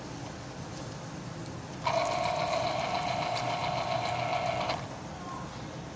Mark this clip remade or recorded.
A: recorded